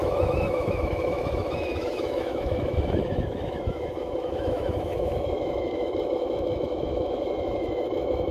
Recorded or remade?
remade